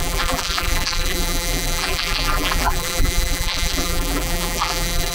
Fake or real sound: fake